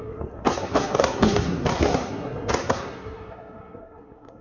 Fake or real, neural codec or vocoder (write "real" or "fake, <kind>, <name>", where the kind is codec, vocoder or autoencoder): fake, codec, SNAC